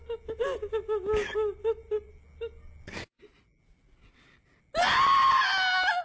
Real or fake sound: real